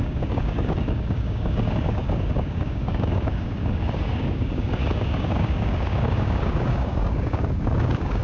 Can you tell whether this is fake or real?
fake